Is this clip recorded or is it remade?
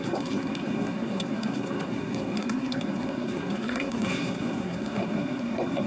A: remade